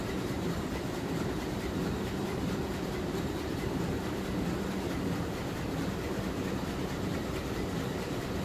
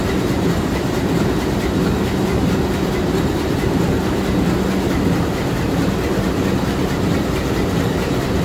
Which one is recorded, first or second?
second